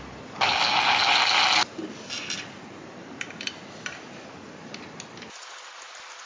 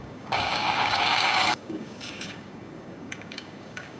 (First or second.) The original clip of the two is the first